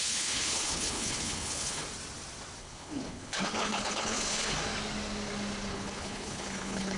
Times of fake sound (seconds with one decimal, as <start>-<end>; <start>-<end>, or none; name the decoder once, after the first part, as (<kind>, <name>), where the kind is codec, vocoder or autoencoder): 0.0-1.8 (codec, HILCodec); 2.6-4.6; 5.7-7.0